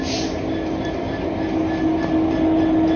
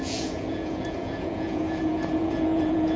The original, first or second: first